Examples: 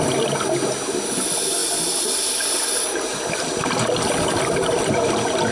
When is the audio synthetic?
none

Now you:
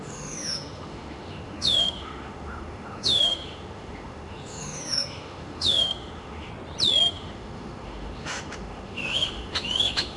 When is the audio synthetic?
0.0-6.5 (autoencoder, DAC-VAE); 7.1-10.2

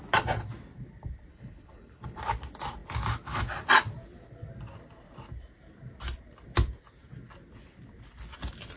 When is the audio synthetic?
1.3-2.2 (codec, HILCodec)